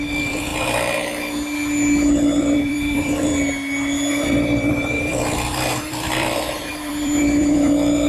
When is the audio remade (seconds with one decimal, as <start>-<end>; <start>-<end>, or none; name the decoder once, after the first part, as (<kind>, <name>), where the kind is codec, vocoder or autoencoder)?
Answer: 0.0-0.5 (vocoder, BigVGAN v2); 2.4-3.3; 4.1-8.1